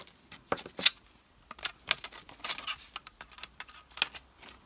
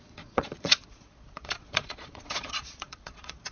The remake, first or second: second